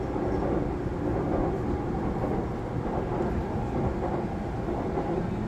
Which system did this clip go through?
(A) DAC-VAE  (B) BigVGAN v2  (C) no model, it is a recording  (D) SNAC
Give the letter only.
C